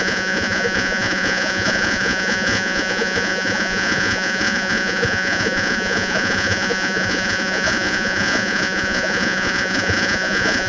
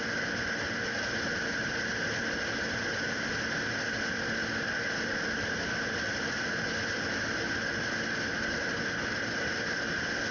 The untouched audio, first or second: second